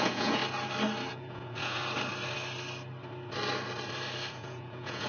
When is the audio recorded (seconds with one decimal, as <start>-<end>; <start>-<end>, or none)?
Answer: 0.4-1.1; 1.8-4.3